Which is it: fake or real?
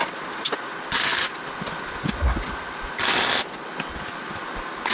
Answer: real